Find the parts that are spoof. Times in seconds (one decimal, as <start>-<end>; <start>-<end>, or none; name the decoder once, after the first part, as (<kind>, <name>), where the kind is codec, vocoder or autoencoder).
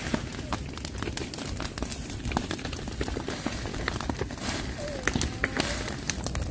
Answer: none